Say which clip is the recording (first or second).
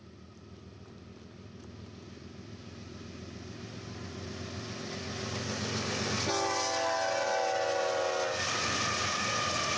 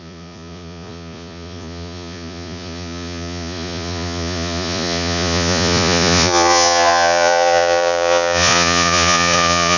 first